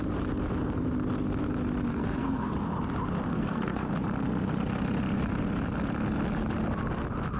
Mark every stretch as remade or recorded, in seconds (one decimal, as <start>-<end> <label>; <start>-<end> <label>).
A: 0.0-1.9 recorded; 1.9-2.5 remade; 2.5-3.3 recorded; 3.3-3.9 remade; 3.9-7.4 recorded